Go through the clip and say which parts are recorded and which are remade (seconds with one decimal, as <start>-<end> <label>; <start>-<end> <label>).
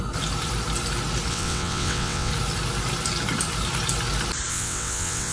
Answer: 0.0-1.3 recorded; 1.3-2.3 remade; 2.3-4.5 recorded; 4.5-5.3 remade